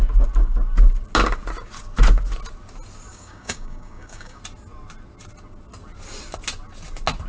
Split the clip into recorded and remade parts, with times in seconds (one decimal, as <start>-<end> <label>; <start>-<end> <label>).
0.0-3.1 recorded; 3.1-4.4 remade; 4.4-7.3 recorded